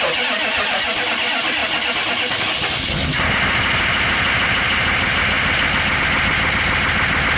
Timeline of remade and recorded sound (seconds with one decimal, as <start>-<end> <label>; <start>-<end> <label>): 0.0-7.4 recorded